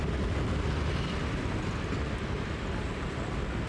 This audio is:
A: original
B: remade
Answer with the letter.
A